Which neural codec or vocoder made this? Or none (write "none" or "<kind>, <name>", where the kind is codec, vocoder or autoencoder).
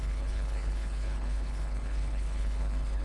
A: codec, HILCodec